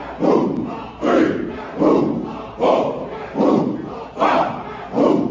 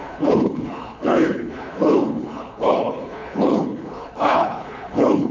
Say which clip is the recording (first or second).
first